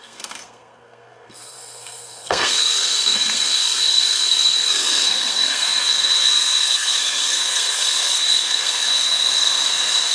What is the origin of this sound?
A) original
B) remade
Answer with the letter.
B